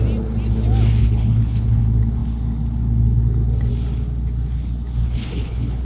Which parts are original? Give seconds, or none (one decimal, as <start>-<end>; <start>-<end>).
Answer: 0.0-1.0; 1.8-5.0